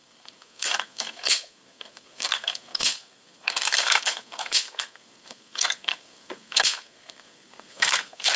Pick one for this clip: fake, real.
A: fake